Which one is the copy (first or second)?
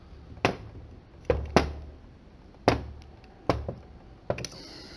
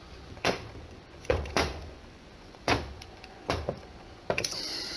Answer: second